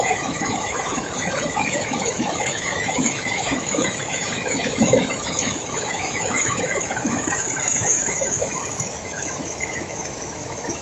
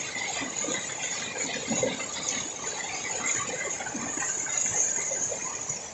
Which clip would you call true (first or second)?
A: second